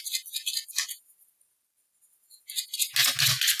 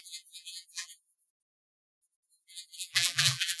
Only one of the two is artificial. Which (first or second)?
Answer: second